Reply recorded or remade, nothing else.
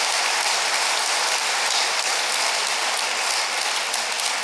recorded